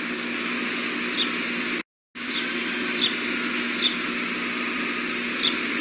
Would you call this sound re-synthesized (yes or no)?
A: no